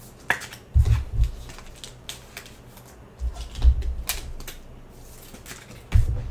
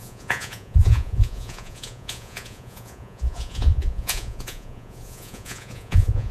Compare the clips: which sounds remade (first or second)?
second